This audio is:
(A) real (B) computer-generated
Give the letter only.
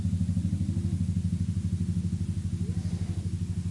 A